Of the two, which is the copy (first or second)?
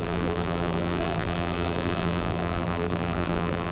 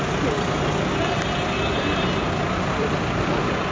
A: first